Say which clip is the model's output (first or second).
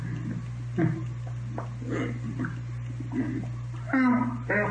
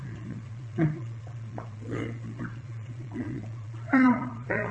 second